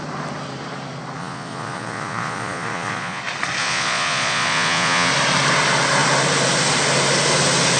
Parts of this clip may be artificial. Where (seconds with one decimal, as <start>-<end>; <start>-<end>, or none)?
1.2-3.2; 3.6-5.1